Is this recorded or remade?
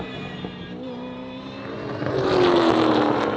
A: recorded